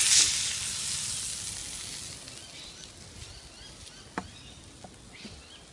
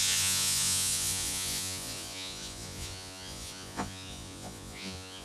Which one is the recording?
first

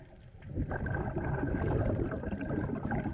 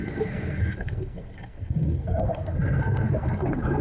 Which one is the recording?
first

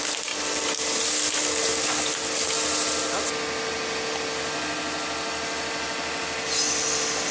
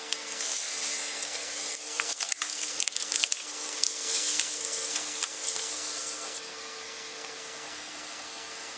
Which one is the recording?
first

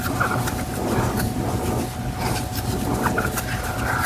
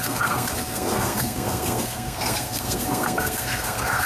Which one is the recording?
first